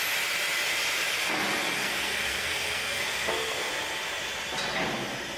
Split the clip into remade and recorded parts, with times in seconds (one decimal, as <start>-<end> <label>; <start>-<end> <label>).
0.0-1.8 recorded; 1.8-3.7 remade; 3.7-5.4 recorded

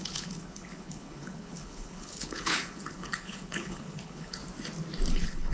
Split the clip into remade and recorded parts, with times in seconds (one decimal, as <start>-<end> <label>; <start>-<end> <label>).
0.0-4.4 remade; 4.4-5.1 recorded; 5.1-5.5 remade

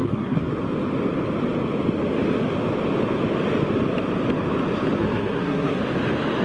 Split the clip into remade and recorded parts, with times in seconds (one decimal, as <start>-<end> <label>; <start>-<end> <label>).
0.0-0.5 remade; 0.5-5.0 recorded; 5.0-5.8 remade; 5.8-6.4 recorded

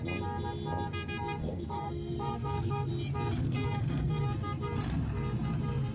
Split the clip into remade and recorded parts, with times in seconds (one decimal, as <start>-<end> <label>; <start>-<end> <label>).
0.0-1.4 recorded; 1.4-2.9 remade; 2.9-3.4 recorded; 3.4-4.2 remade; 4.2-5.9 recorded

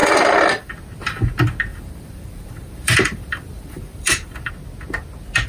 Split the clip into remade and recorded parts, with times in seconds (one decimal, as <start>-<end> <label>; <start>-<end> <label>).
0.0-0.7 remade; 0.7-1.7 recorded; 1.7-4.5 remade; 4.5-5.5 recorded

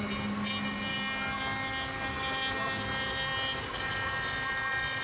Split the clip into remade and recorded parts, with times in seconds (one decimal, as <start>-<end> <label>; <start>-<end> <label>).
0.0-5.0 recorded

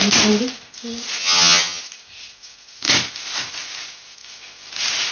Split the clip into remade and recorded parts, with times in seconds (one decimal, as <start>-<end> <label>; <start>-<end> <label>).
0.0-1.2 recorded; 1.2-1.8 remade; 1.8-5.1 recorded